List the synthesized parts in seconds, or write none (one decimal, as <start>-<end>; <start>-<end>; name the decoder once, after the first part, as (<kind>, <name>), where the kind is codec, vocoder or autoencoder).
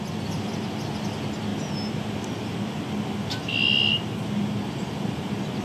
none